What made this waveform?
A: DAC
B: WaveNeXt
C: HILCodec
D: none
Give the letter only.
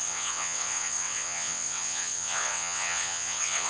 B